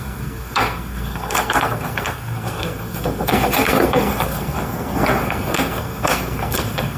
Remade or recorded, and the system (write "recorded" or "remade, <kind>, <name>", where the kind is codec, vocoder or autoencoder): remade, codec, SNAC